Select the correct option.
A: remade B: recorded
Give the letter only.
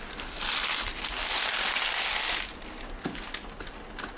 B